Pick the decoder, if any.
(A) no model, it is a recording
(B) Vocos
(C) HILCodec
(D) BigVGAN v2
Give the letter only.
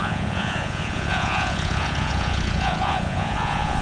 B